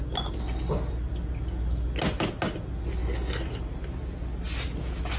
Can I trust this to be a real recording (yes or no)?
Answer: yes